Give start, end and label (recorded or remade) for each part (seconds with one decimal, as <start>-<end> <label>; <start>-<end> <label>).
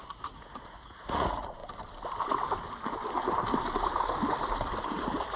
0.0-1.6 remade; 1.6-4.8 recorded; 4.8-5.4 remade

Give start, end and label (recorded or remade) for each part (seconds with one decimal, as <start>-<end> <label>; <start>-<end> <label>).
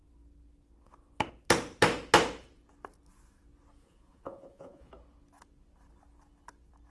0.0-3.8 recorded; 3.8-4.9 remade; 4.9-6.9 recorded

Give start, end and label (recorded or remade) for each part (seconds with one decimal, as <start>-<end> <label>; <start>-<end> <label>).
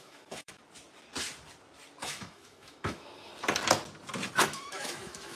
0.0-0.6 remade; 0.6-2.0 recorded; 2.0-3.3 remade; 3.3-4.4 recorded; 4.4-5.4 remade